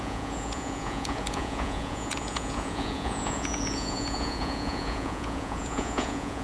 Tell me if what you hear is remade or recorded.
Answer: remade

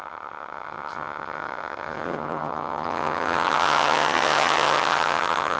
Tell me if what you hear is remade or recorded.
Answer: remade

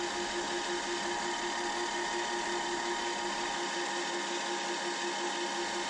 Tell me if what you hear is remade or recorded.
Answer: recorded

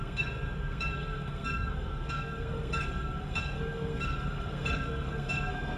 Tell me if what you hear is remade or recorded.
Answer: remade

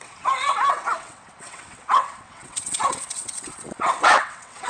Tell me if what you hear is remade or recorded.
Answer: remade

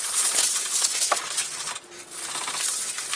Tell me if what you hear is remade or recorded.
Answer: recorded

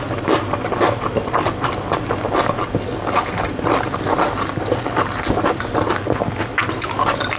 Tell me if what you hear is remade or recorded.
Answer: recorded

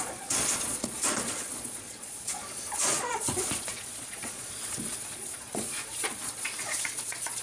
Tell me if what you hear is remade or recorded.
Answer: remade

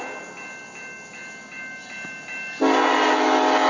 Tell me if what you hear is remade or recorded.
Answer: recorded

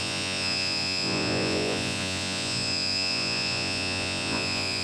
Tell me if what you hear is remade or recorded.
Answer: remade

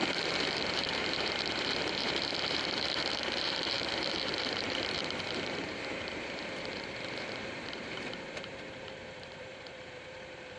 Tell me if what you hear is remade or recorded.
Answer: remade